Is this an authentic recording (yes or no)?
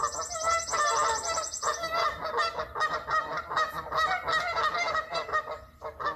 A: yes